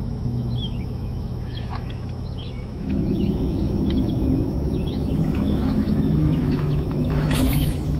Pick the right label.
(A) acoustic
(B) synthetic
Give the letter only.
B